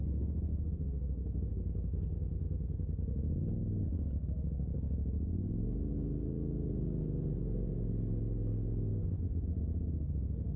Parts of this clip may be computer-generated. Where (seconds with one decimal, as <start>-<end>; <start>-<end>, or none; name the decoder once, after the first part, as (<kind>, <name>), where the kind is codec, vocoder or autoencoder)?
0.5-1.5 (codec, SNAC)

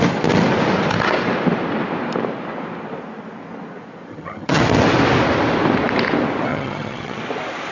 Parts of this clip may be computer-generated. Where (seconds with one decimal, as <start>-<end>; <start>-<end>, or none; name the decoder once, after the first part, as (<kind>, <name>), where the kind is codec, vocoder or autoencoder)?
4.1-4.6 (vocoder, HiFi-GAN); 6.5-7.2